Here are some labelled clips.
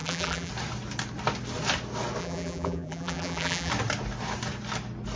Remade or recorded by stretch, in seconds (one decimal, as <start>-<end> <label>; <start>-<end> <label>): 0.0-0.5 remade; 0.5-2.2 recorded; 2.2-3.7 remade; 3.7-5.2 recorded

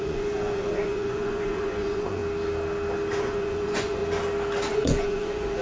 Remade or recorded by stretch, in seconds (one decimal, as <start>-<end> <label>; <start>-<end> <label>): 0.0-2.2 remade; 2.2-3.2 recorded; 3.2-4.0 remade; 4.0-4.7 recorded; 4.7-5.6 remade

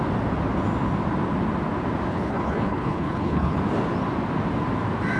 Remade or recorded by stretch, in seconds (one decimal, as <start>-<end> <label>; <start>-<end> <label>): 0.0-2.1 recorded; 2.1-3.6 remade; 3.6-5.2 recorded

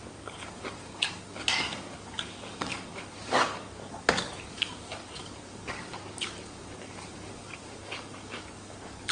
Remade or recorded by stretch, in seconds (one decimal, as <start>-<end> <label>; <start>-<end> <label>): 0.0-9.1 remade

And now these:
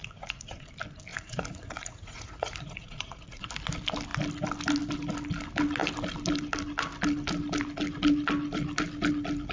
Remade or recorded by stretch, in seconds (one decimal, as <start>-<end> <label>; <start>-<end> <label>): 0.0-0.7 remade; 0.7-1.1 recorded; 1.1-3.5 remade; 3.5-9.5 recorded

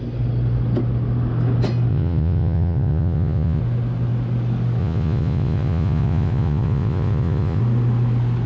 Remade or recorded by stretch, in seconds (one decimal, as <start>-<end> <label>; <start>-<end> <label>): 0.0-1.9 recorded; 1.9-3.6 remade; 3.6-4.8 recorded; 4.8-7.6 remade; 7.6-8.5 recorded